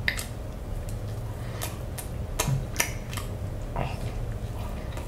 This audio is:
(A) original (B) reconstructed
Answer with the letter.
A